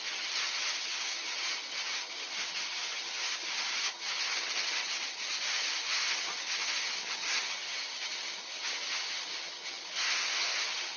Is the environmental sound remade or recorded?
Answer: remade